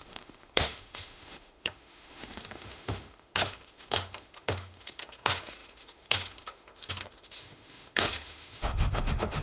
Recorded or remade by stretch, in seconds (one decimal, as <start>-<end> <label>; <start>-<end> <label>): 0.0-9.4 remade